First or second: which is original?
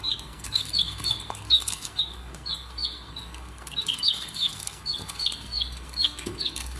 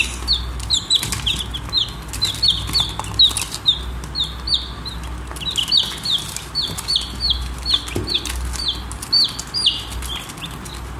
second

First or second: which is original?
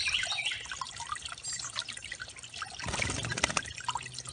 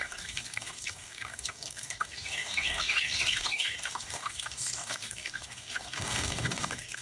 first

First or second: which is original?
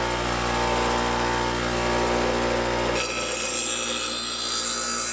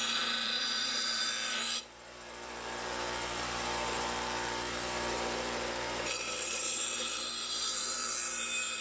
first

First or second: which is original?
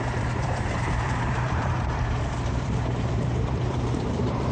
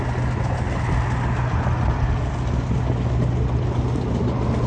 second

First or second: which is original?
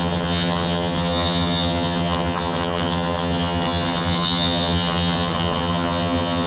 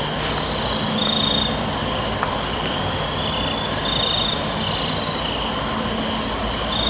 second